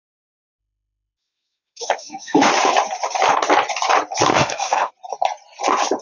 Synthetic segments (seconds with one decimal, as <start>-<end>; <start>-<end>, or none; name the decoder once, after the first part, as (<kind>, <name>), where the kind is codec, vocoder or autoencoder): 0.6-2.5 (autoencoder, DAC-VAE); 4.3-4.9